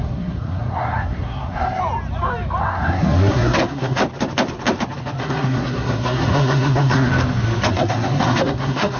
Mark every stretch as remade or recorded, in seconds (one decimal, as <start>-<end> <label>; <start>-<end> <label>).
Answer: 0.0-1.8 remade; 1.8-2.6 recorded; 2.6-4.0 remade; 4.0-5.2 recorded; 5.2-7.1 remade; 7.1-7.7 recorded; 7.7-9.0 remade